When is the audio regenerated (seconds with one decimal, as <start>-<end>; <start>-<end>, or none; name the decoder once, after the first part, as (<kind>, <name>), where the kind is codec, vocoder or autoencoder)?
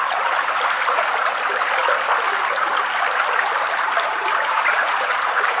0.0-1.8 (vocoder, BigVGAN v2); 4.5-5.6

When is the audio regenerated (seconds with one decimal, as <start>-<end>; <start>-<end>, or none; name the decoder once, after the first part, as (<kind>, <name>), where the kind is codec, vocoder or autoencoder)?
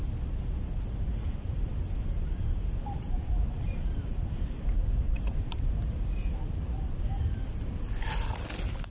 1.7-6.1 (vocoder, BigVGAN v2)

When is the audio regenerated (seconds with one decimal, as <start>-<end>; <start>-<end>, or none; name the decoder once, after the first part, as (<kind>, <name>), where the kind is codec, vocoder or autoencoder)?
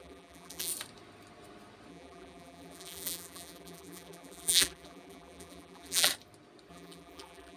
0.0-0.7 (vocoder, BigVGAN v2); 1.9-6.1; 6.7-7.6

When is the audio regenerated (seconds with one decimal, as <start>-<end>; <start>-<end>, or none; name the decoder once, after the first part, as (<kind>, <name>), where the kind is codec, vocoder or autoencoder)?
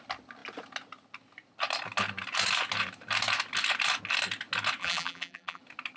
4.8-5.6 (vocoder, BigVGAN v2)